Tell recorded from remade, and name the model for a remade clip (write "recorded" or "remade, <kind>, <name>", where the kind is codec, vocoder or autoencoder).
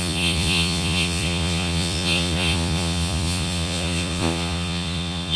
remade, vocoder, Vocos